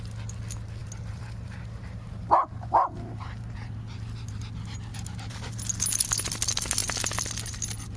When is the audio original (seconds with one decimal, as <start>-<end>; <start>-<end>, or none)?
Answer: 0.0-0.8; 4.4-4.9; 5.6-8.0